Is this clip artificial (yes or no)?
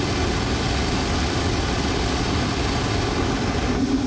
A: no